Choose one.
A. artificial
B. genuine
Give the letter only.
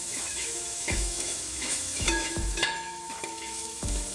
A